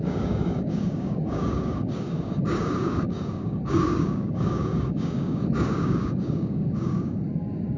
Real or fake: fake